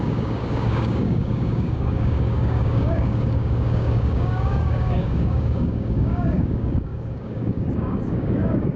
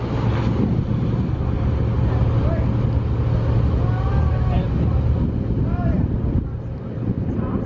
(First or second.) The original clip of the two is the second